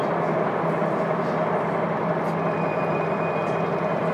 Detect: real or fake real